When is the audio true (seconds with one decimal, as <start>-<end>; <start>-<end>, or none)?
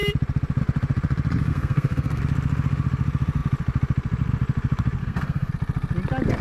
0.0-1.5; 2.2-5.0; 5.5-6.4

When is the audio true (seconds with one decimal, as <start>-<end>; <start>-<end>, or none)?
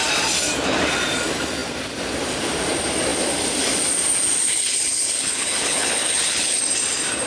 0.0-4.4; 6.6-7.3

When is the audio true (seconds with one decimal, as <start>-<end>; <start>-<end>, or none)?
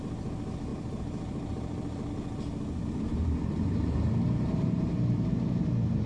0.0-0.7; 2.1-3.1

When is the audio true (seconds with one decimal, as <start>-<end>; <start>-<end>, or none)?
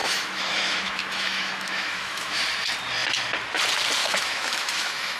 2.4-4.0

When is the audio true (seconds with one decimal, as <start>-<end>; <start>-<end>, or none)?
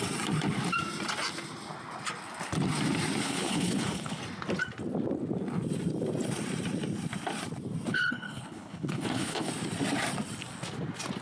0.0-3.2; 4.2-7.9; 9.5-11.2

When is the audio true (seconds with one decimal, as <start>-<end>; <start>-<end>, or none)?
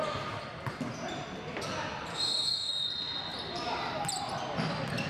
0.0-2.1; 2.7-5.1